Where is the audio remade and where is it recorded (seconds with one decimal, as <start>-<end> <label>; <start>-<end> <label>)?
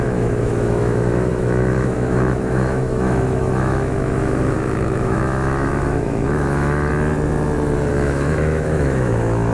0.0-6.9 remade; 6.9-7.9 recorded; 7.9-9.5 remade